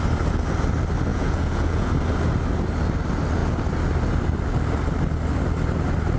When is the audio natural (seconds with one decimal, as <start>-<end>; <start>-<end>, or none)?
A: 0.0-1.1; 1.9-6.2

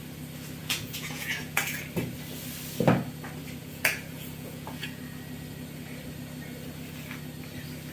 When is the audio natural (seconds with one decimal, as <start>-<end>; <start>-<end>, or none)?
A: 0.0-0.6; 1.8-3.6; 5.0-7.9